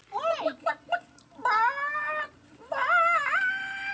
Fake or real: real